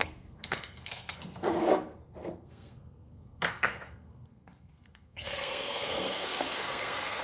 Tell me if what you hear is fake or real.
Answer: fake